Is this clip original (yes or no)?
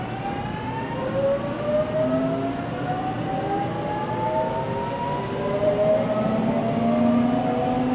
yes